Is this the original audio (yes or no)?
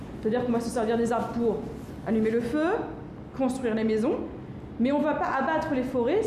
yes